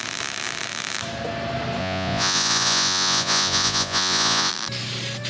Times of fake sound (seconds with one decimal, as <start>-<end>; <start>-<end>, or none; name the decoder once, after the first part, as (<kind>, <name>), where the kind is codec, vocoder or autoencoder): 1.8-4.5 (vocoder, Vocos)